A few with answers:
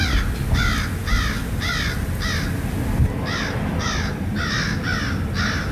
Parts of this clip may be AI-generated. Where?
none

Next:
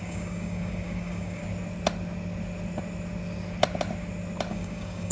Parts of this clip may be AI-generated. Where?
0.0-1.4 (codec, DAC); 4.5-5.1

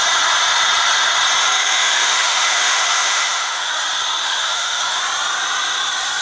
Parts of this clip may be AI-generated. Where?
1.5-3.7 (autoencoder, DAC-VAE); 4.2-5.0

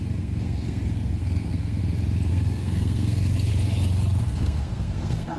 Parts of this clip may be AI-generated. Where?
0.0-1.8 (codec, SNAC); 2.3-3.5; 4.2-5.4

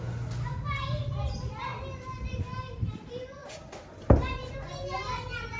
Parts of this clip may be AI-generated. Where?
none